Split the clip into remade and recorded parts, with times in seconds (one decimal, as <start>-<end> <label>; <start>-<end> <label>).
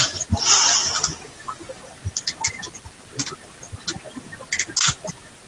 0.0-5.5 recorded